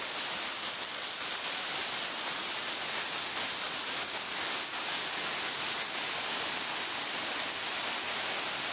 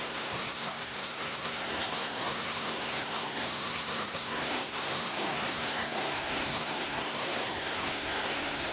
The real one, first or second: first